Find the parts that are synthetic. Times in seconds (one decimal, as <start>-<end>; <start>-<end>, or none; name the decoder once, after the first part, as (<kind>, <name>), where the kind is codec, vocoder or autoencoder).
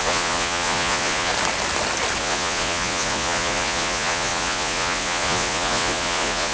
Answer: 0.0-1.3 (vocoder, Vocos); 2.2-6.5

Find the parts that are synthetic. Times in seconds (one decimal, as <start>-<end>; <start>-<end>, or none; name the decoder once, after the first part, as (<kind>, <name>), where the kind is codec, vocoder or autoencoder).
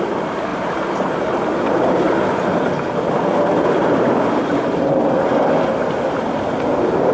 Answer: 0.5-3.1 (vocoder, BigVGAN v2); 4.4-5.3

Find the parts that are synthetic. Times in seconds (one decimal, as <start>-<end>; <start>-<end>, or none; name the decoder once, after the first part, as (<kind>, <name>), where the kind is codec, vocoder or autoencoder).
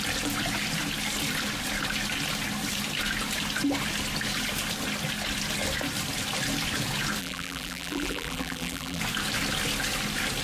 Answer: 7.2-9.0 (vocoder, BigVGAN v2)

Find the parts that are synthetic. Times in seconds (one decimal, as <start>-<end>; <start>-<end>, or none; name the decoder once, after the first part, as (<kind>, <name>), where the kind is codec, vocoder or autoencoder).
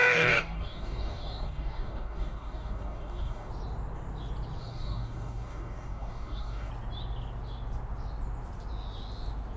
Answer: 0.0-3.5 (codec, DAC); 4.6-6.7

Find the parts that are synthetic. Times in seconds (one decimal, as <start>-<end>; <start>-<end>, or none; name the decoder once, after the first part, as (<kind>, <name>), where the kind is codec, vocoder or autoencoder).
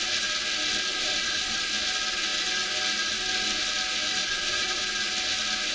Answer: 0.9-1.7 (vocoder, Vocos); 4.2-4.8